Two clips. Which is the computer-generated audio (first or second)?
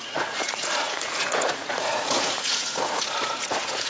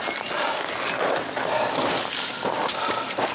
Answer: first